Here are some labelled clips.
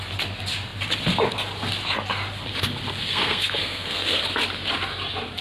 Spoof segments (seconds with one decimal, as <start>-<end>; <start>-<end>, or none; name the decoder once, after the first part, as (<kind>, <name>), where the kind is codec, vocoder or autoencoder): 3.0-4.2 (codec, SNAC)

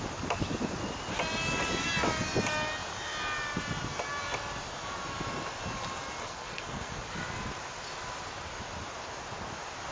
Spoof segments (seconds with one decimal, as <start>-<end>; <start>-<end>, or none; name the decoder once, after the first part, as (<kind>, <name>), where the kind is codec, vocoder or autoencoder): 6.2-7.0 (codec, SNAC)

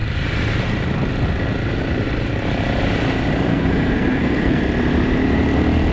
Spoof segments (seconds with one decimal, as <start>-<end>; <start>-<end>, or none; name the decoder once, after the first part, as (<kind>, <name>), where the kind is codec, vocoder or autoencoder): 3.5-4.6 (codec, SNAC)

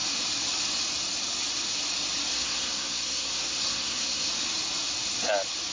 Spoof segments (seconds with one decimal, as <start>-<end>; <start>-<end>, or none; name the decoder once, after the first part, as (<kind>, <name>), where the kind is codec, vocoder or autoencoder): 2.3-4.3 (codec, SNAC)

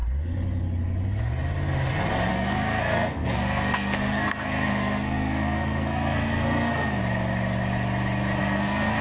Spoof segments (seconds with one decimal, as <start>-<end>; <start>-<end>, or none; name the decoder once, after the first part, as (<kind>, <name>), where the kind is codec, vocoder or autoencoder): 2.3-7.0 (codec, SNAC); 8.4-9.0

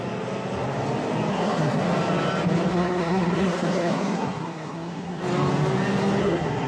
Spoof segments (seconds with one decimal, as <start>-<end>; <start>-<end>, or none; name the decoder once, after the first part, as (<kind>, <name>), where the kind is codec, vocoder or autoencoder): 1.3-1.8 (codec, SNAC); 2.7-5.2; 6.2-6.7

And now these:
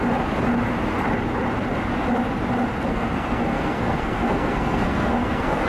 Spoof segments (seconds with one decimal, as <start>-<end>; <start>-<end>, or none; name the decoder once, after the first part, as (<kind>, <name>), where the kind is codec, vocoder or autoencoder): 2.9-5.7 (codec, SNAC)

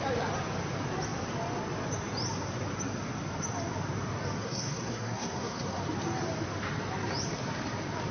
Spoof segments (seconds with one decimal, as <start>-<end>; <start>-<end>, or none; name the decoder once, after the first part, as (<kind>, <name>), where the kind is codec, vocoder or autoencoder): 4.4-5.8 (codec, SNAC)